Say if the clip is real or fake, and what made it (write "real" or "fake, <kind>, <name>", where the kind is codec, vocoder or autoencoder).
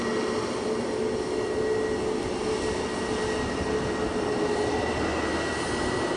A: real